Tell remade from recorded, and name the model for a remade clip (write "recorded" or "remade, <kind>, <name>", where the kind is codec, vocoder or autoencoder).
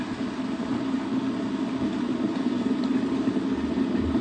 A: recorded